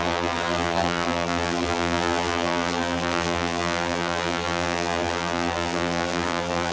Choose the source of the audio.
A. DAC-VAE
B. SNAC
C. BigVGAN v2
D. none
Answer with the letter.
C